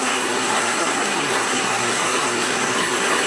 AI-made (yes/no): yes